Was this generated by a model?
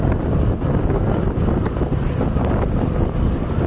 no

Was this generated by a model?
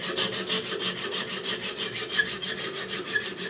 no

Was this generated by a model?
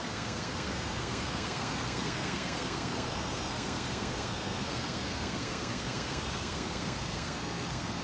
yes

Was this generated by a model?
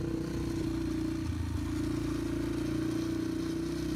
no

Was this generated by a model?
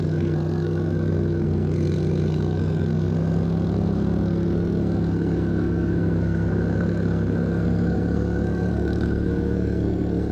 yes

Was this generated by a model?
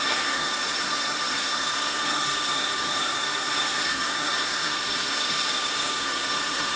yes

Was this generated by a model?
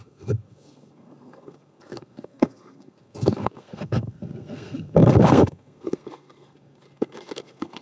yes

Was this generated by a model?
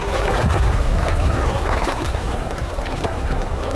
yes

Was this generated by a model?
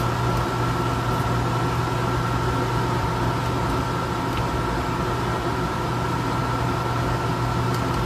no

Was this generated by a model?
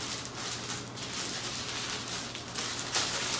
no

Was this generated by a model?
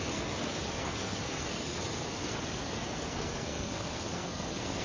yes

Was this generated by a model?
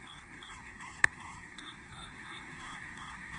yes